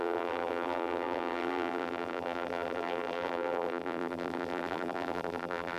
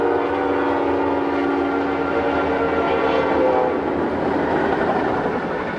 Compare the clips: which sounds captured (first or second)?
second